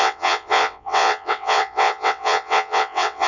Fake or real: fake